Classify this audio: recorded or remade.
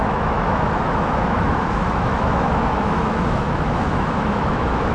remade